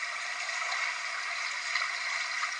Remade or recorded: recorded